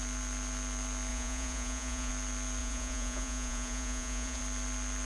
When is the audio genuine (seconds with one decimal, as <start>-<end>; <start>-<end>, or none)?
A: 0.0-1.1; 2.1-2.6; 4.4-5.0